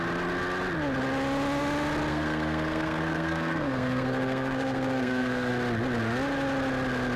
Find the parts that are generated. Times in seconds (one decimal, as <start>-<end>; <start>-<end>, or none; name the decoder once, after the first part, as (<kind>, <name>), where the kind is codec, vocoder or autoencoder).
2.1-5.5 (codec, SNAC)